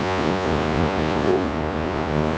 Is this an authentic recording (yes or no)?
no